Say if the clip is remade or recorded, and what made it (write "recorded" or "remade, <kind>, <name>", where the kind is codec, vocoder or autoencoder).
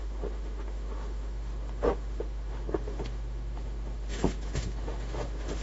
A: remade, autoencoder, DAC-VAE